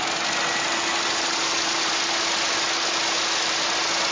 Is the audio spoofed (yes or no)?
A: no